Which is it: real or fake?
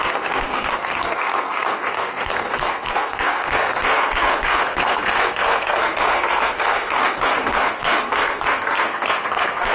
fake